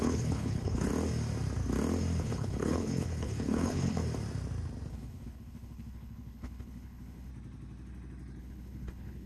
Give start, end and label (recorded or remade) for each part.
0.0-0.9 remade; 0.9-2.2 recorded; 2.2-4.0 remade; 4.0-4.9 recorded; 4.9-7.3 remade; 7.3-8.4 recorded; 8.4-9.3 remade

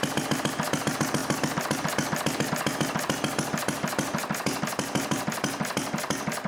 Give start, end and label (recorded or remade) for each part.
0.0-6.5 recorded

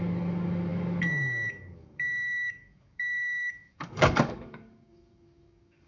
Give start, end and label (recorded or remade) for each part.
0.0-5.9 remade

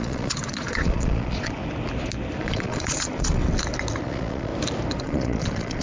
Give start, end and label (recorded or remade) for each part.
0.0-1.6 remade; 1.6-2.4 recorded; 2.4-3.4 remade; 3.4-4.0 recorded; 4.0-4.5 remade; 4.5-5.0 recorded; 5.0-5.8 remade

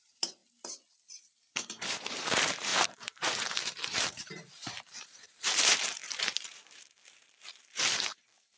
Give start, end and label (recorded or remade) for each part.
0.0-0.4 remade; 0.4-1.5 recorded; 1.5-8.6 remade

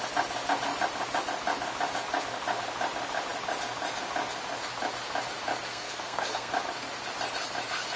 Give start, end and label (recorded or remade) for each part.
0.0-5.7 recorded; 5.7-6.5 remade; 6.5-8.0 recorded

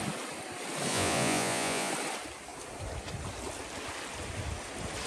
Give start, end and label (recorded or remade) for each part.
0.0-0.9 recorded; 0.9-1.9 remade; 1.9-5.1 recorded

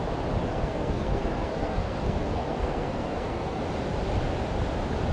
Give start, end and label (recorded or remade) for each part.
0.0-0.5 recorded; 0.5-3.6 remade; 3.6-5.1 recorded